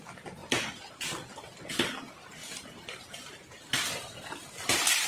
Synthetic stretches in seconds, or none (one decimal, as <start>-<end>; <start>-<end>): 0.4-1.6; 2.4-3.7